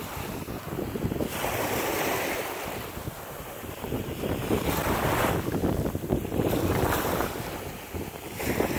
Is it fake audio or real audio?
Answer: fake